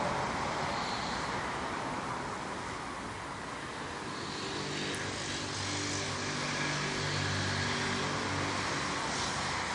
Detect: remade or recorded recorded